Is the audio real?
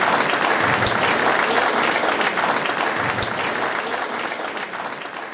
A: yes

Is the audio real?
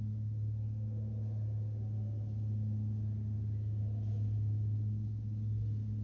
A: yes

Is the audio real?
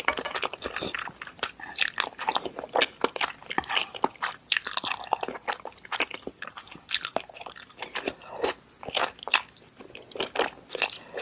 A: yes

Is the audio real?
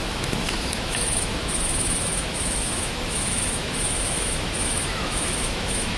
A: no